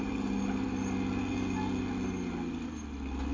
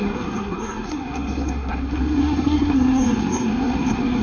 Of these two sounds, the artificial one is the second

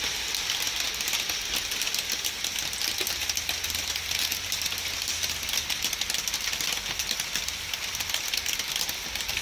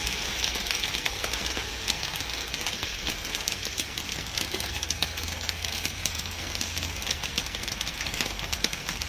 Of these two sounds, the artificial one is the second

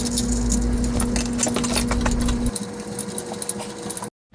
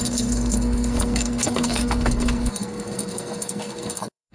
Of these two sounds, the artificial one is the second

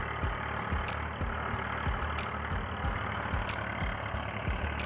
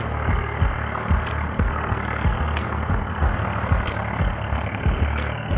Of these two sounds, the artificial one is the second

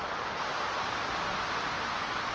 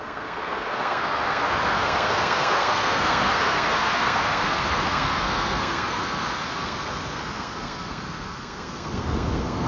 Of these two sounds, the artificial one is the second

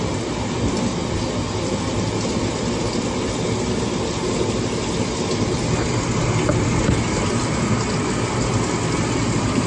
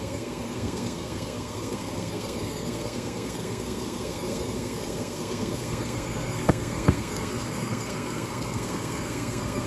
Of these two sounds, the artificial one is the second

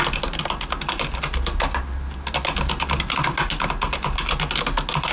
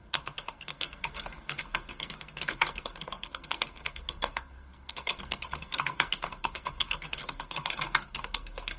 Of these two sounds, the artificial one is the second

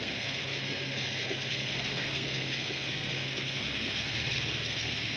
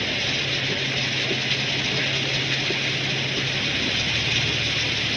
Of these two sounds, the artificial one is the first